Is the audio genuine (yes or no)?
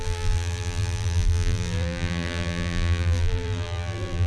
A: no